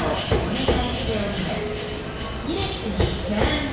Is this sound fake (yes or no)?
no